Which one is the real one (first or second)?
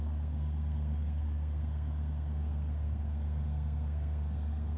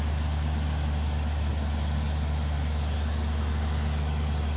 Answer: second